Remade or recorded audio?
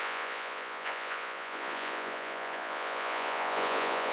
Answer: remade